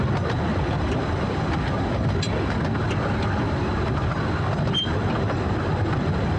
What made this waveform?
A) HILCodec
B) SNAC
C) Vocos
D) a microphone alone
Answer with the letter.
D